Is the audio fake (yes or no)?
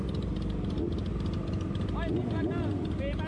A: no